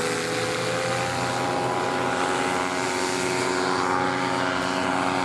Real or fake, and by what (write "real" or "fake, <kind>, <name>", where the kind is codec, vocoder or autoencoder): real